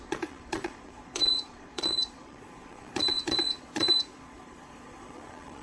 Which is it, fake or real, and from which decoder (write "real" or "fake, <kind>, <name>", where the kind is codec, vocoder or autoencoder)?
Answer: fake, vocoder, Vocos